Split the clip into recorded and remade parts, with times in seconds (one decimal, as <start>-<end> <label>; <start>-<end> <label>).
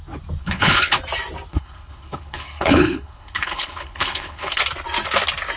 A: 0.0-0.4 recorded; 0.4-1.0 remade; 1.0-1.5 recorded; 1.5-4.6 remade; 4.6-5.6 recorded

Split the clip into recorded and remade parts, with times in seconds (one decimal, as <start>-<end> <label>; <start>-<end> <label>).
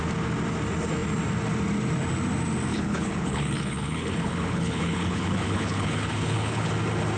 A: 0.0-2.7 recorded; 2.7-6.7 remade; 6.7-7.2 recorded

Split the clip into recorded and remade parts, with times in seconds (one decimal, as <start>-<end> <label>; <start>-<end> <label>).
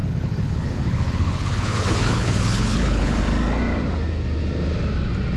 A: 0.0-3.2 remade; 3.2-5.4 recorded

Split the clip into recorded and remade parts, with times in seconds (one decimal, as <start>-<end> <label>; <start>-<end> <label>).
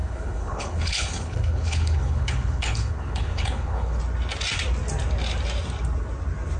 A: 0.0-4.0 remade; 4.0-6.6 recorded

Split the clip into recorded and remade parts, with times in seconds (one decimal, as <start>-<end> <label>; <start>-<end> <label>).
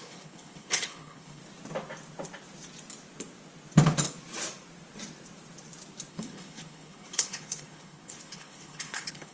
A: 0.0-1.4 remade; 1.4-6.1 recorded; 6.1-9.3 remade